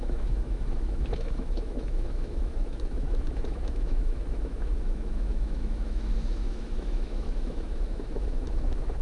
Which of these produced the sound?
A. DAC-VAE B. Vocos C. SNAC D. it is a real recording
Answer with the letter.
A